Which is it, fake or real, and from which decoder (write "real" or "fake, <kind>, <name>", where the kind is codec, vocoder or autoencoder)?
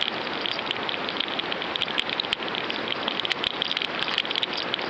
real